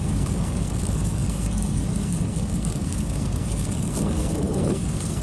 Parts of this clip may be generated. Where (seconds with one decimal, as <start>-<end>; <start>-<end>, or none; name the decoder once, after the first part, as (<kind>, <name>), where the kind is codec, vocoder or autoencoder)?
0.0-5.2 (codec, SNAC)